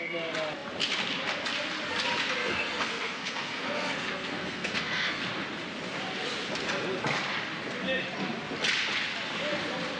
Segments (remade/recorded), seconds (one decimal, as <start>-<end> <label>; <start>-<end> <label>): 0.0-2.4 recorded; 2.4-5.2 remade; 5.2-10.0 recorded